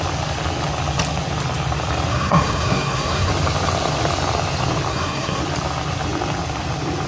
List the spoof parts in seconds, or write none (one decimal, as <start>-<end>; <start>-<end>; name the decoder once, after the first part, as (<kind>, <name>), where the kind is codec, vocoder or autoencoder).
2.1-3.3 (codec, SNAC); 4.9-5.4